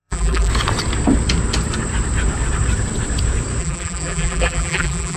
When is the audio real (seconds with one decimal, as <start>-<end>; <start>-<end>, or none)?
0.5-3.6